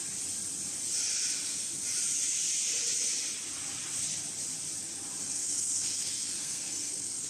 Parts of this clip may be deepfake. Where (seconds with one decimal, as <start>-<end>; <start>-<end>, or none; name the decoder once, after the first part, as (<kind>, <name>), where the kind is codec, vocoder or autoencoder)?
5.2-7.3 (codec, SNAC)